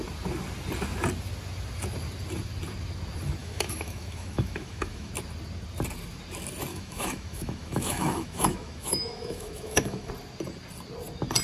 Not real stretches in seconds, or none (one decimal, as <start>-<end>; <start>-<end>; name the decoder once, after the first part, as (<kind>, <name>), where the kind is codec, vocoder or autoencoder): 3.4-5.1 (autoencoder, DAC-VAE); 6.7-10.1